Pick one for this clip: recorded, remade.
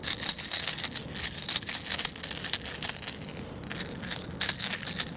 recorded